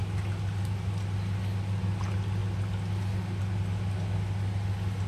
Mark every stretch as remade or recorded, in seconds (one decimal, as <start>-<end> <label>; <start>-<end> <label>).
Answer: 0.0-5.1 recorded